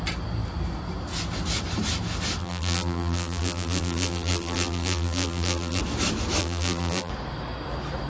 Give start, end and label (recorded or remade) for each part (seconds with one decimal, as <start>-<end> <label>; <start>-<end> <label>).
0.0-2.4 recorded; 2.4-5.8 remade; 5.8-6.4 recorded; 6.4-7.1 remade; 7.1-8.1 recorded